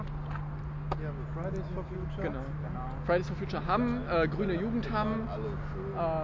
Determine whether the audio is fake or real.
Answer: real